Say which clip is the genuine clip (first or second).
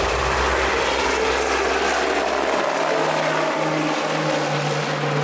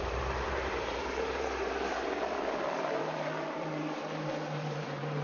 first